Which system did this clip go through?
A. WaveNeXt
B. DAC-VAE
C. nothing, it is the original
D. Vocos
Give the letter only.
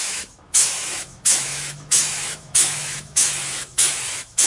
B